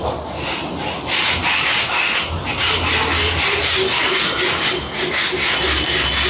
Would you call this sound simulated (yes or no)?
no